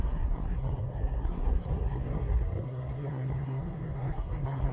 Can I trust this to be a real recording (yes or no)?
no